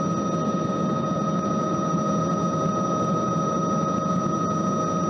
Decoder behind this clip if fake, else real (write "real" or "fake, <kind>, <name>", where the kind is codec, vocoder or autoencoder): real